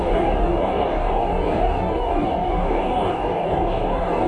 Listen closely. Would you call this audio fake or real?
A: fake